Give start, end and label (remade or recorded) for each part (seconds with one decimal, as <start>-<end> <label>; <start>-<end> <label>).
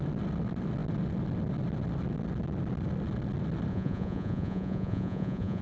0.0-3.7 recorded; 3.7-5.6 remade